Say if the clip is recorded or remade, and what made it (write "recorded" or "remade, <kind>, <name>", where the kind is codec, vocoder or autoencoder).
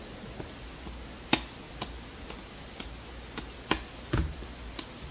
recorded